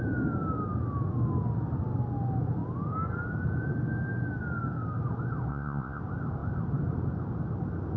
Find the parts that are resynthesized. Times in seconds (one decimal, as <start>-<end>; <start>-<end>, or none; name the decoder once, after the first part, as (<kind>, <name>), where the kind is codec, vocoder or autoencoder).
5.5-6.0 (vocoder, Vocos)